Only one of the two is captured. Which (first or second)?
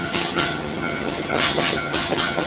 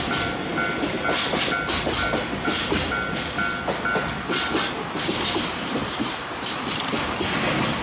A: second